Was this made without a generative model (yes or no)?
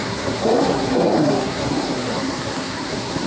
no